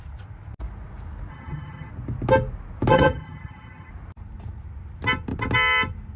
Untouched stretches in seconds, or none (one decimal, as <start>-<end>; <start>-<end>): 0.0-1.3; 1.9-2.9; 3.9-6.2